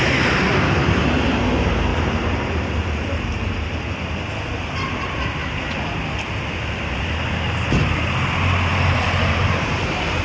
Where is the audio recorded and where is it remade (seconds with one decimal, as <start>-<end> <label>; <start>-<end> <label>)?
0.0-1.9 recorded; 1.9-3.8 remade; 3.8-8.7 recorded; 8.7-10.2 remade